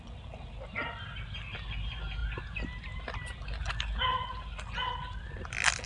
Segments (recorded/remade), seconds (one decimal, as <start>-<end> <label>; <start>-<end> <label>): 0.0-5.9 recorded